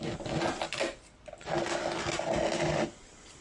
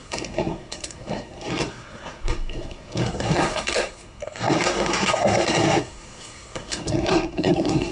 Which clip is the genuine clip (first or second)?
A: first